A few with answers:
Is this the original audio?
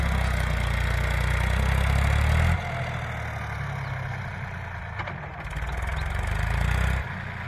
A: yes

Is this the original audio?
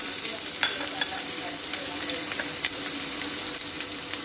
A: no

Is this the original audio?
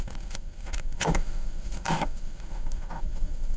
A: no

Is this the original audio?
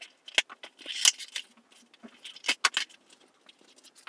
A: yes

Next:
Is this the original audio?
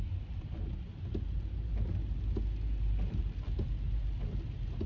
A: yes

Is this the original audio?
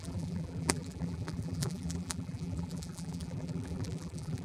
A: no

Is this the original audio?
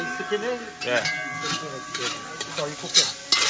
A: yes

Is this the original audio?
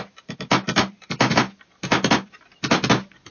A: yes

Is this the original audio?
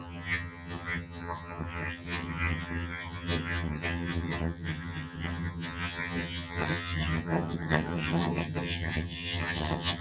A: no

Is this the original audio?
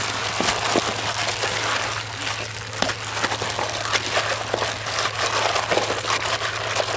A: yes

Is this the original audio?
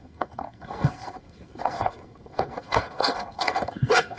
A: no